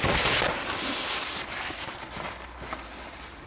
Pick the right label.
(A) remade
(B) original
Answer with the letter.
B